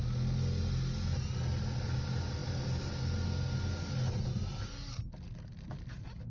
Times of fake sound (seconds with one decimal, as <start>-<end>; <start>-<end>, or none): none